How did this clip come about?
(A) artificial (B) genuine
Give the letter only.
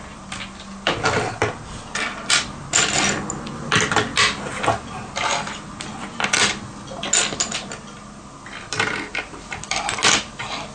B